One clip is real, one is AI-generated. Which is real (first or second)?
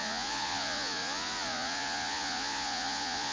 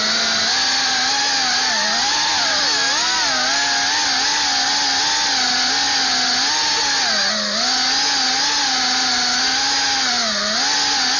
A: second